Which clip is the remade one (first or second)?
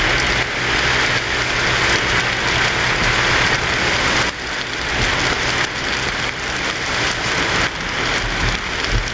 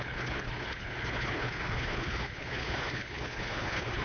second